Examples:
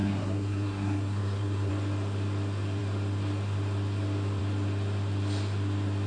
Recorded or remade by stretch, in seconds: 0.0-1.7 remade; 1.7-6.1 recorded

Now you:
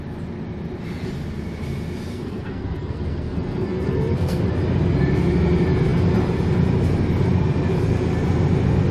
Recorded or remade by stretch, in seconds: 0.0-2.1 recorded; 2.1-4.4 remade; 4.4-8.9 recorded

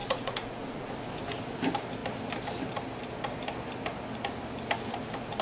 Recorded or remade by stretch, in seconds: 0.0-0.9 remade; 0.9-5.4 recorded